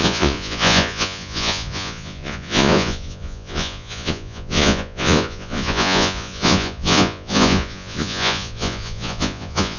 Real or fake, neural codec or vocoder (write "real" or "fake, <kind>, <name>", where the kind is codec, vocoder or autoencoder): fake, vocoder, Vocos